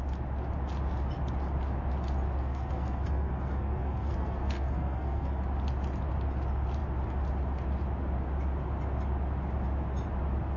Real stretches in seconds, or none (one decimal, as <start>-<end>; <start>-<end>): 0.0-2.4; 5.4-10.6